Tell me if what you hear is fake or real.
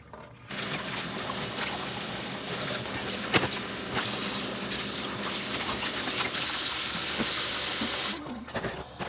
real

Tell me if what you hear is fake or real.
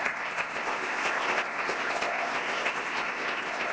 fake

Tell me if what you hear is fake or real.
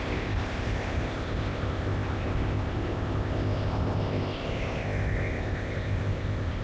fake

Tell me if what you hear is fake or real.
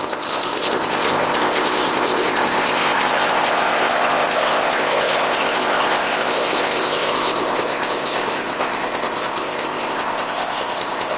fake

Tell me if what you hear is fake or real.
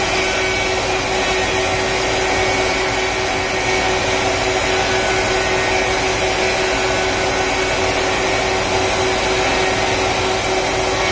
real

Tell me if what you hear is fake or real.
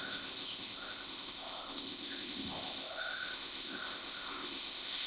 fake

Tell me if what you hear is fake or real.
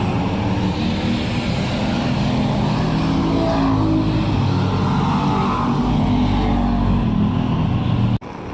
real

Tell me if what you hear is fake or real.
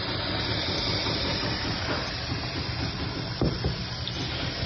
real